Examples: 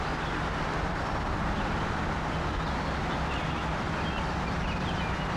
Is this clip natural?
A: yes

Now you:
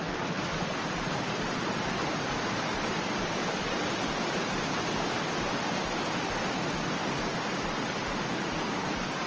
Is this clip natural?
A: yes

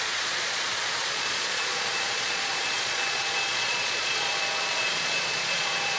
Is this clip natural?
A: no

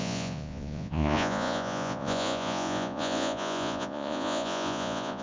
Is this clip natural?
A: no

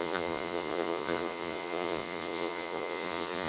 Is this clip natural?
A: no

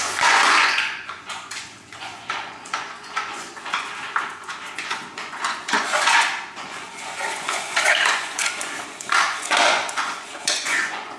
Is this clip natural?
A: no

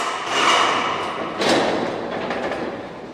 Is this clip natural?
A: yes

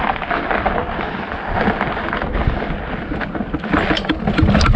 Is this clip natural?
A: yes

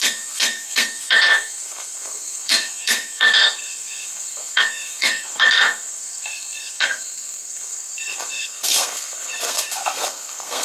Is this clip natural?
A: no